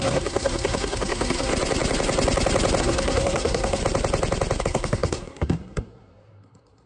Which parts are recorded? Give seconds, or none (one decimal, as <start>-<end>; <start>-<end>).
1.5-2.8; 3.8-4.6